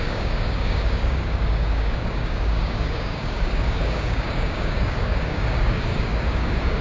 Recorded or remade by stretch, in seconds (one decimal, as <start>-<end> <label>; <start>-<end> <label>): 0.0-6.8 remade